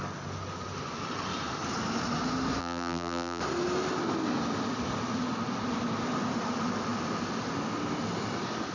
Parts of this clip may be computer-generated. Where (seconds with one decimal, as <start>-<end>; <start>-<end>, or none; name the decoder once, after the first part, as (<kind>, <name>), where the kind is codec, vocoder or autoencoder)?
2.6-3.4 (vocoder, BigVGAN v2)